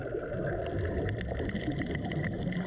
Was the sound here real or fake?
real